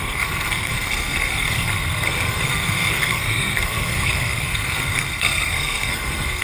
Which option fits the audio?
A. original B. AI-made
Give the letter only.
B